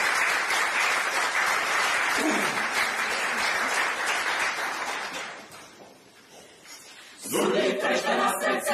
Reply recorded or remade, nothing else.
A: remade